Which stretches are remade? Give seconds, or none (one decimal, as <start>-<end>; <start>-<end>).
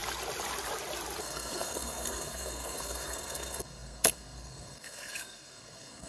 1.2-6.1